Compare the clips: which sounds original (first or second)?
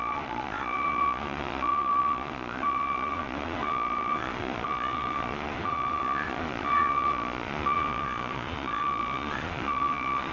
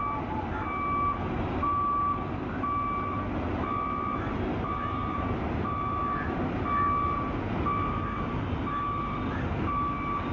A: second